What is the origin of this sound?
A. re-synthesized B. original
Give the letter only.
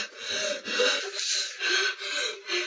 B